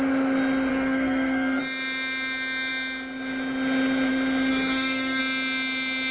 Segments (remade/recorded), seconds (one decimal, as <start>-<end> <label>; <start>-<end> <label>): 0.0-0.7 recorded; 0.7-1.6 remade; 1.6-4.5 recorded; 4.5-5.2 remade; 5.2-6.1 recorded